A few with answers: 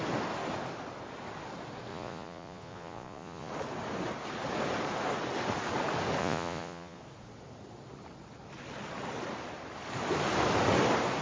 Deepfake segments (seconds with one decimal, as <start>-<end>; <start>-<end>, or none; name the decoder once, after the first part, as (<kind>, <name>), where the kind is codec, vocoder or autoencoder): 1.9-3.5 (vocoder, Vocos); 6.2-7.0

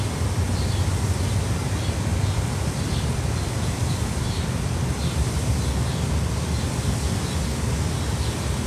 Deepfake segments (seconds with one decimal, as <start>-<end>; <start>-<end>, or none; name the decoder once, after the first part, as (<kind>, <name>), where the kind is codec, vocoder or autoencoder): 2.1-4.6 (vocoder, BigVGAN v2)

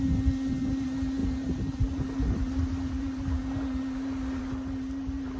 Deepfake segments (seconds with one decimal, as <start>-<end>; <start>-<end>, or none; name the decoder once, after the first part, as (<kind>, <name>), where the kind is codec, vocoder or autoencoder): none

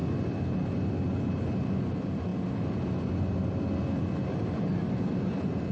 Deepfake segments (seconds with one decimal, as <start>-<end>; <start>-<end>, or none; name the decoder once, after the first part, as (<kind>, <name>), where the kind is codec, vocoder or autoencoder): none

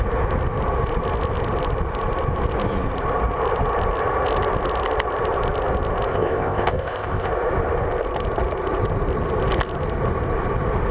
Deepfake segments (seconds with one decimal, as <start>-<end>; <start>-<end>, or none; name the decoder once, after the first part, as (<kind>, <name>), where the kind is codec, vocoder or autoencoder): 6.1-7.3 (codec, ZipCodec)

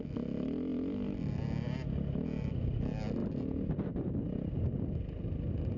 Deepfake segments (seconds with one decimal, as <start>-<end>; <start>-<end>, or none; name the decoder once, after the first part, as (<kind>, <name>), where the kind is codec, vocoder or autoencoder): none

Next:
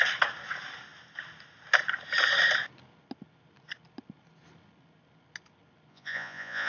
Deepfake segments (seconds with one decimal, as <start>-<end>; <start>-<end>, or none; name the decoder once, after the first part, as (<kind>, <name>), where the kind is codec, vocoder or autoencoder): 5.9-6.7 (vocoder, Vocos)

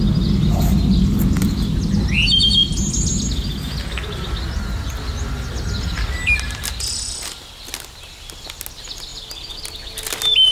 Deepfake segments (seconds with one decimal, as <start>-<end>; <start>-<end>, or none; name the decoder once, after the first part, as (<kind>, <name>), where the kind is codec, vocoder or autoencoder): none